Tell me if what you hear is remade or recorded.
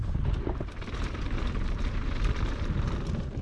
recorded